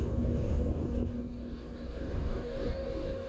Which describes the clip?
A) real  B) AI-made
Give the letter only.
B